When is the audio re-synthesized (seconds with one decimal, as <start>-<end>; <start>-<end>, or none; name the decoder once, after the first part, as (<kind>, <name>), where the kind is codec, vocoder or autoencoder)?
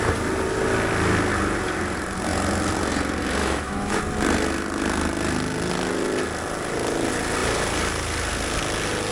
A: 3.4-4.0 (autoencoder, DAC-VAE)